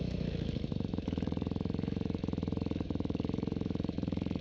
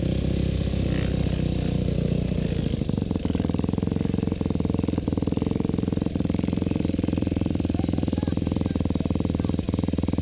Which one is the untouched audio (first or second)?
second